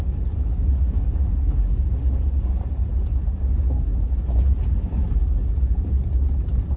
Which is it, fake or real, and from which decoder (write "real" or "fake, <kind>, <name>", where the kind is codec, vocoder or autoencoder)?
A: real